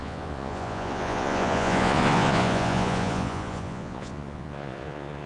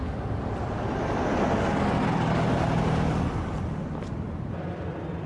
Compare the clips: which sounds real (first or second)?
second